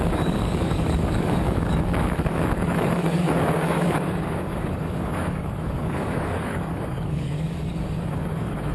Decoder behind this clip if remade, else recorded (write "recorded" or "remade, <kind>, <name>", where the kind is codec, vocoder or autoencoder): remade, codec, DAC